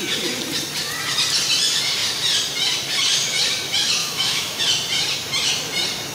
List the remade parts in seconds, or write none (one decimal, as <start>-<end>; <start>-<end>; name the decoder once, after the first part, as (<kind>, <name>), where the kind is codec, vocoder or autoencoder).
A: 4.0-4.6 (autoencoder, DAC-VAE)